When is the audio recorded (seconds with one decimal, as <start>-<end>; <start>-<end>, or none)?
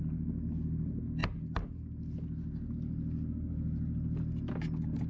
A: 0.0-5.1